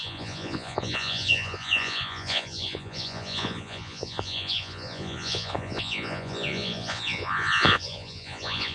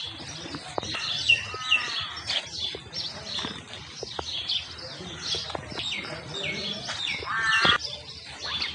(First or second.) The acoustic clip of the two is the second